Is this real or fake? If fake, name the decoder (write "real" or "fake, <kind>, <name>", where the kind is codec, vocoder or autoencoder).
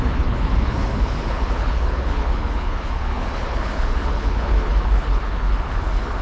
fake, codec, HILCodec